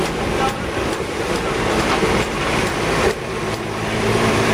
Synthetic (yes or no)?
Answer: yes